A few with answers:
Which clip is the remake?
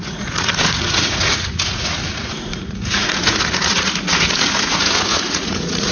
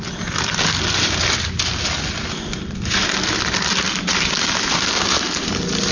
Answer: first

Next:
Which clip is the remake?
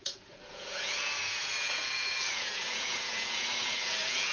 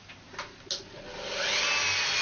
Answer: first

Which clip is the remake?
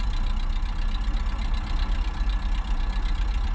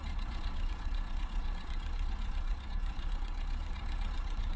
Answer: second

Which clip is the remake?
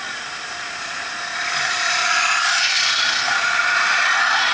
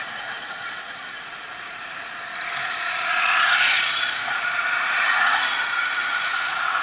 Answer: second